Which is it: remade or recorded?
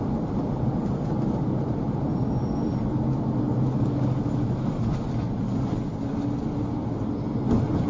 recorded